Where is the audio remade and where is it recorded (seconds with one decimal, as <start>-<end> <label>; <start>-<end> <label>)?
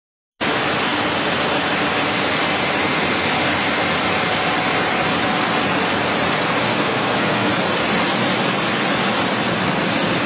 0.0-6.6 recorded; 6.6-7.5 remade; 7.5-10.3 recorded